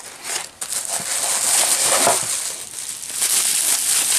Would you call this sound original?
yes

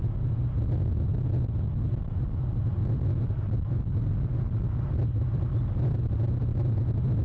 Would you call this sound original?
yes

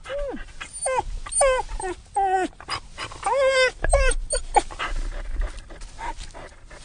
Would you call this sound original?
yes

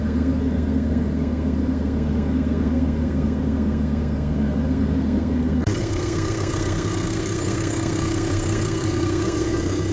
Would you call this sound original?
no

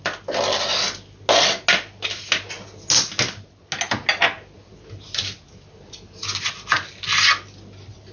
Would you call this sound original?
yes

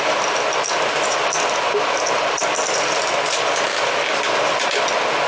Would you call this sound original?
yes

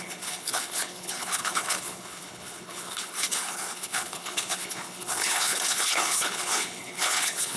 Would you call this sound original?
no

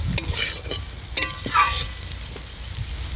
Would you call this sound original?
yes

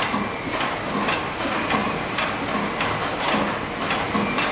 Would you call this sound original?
yes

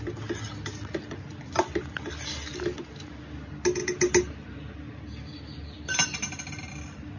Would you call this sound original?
yes